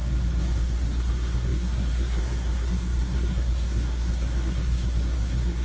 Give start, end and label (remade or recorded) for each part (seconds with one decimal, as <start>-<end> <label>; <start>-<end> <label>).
0.0-0.6 recorded; 0.6-5.6 remade